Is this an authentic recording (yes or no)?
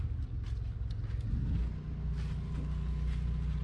yes